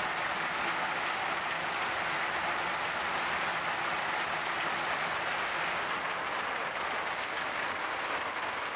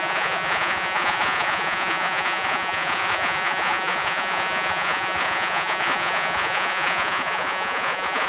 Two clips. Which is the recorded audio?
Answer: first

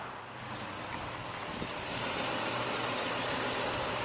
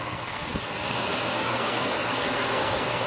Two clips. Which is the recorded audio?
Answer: first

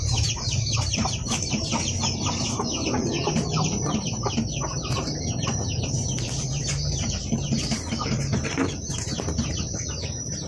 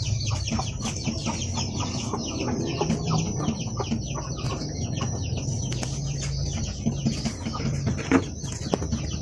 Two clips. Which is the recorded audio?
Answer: second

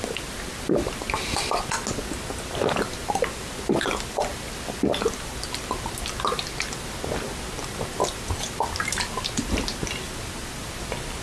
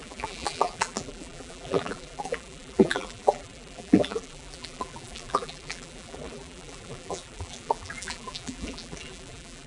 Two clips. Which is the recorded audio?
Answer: first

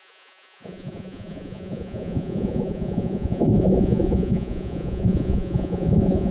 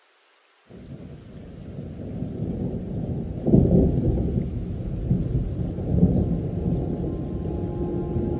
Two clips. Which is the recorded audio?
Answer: second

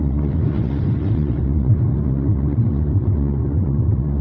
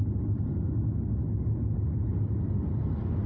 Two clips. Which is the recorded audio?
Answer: second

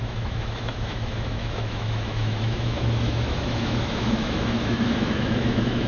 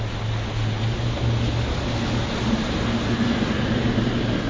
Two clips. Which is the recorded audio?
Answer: second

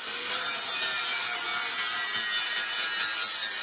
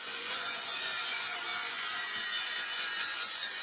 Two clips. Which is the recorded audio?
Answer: first